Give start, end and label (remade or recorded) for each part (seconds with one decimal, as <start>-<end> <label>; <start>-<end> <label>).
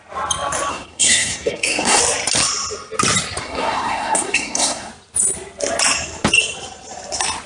0.0-0.7 recorded; 0.7-2.0 remade; 2.0-3.4 recorded; 3.4-4.9 remade; 4.9-7.5 recorded